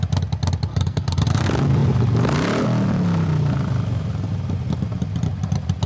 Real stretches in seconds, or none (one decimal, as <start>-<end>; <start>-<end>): 0.0-0.7; 1.4-5.9